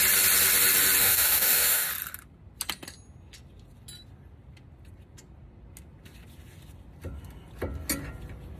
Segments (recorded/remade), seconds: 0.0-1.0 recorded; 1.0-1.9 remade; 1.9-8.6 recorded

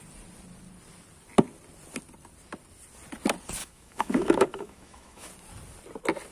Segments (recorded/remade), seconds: 0.0-3.6 recorded; 3.6-5.3 remade; 5.3-6.3 recorded

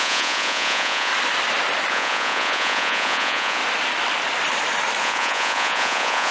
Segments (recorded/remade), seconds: 0.0-1.1 remade; 1.1-1.9 recorded; 1.9-3.6 remade; 3.6-5.0 recorded; 5.0-6.3 remade